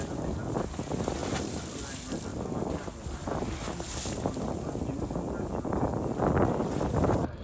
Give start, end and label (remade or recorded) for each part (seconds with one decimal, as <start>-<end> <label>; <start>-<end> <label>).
0.0-7.4 recorded